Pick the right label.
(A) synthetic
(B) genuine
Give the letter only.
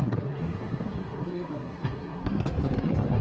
A